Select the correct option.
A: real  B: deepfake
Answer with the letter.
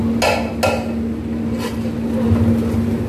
A